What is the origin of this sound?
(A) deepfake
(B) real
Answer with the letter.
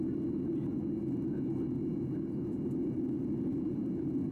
B